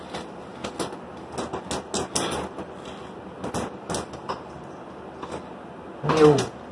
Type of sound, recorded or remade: recorded